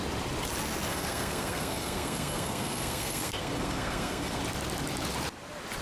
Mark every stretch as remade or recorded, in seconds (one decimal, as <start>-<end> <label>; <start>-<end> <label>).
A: 0.0-0.9 recorded; 0.9-4.4 remade; 4.4-5.8 recorded